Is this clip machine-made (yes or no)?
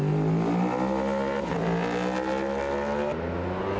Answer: no